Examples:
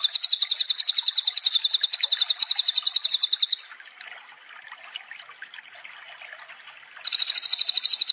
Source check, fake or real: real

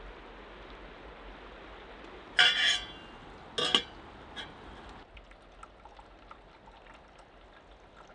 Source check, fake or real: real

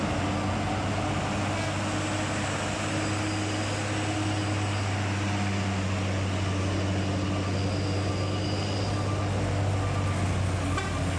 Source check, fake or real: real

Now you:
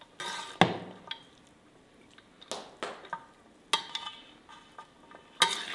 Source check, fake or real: real